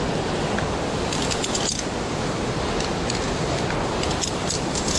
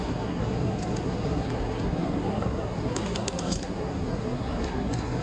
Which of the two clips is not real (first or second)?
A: second